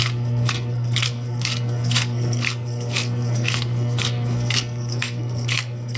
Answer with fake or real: fake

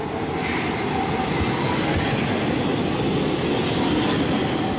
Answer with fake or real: real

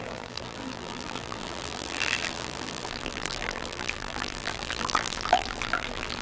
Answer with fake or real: fake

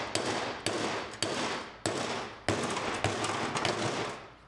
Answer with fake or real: real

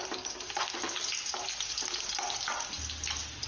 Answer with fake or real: real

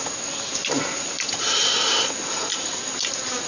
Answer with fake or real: real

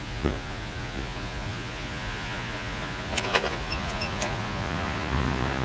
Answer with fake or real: fake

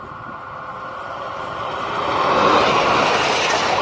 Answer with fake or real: real